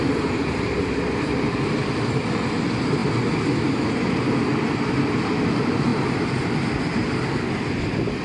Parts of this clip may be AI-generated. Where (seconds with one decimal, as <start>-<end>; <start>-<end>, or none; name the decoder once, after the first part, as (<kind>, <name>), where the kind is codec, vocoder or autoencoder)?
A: 0.4-2.5 (vocoder, BigVGAN v2); 3.0-3.7; 5.9-6.4